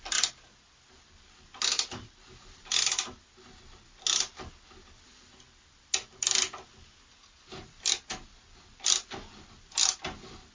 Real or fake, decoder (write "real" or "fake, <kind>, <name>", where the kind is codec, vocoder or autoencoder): real